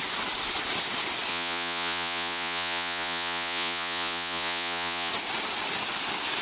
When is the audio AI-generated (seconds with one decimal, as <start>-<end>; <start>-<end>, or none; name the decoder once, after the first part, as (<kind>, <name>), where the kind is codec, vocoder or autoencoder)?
1.3-5.1 (vocoder, Vocos)